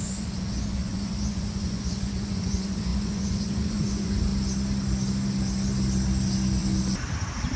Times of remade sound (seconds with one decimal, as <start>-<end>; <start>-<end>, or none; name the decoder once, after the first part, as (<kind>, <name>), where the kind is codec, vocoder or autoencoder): 0.0-4.3 (vocoder, Vocos)